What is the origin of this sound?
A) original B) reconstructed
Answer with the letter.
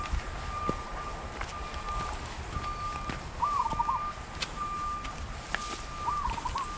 A